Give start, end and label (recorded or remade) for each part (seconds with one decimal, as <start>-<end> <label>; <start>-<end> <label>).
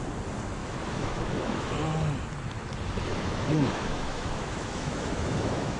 0.0-0.6 recorded; 0.6-1.7 remade; 1.7-3.1 recorded; 3.1-5.8 remade